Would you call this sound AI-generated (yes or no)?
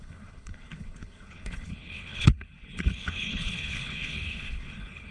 yes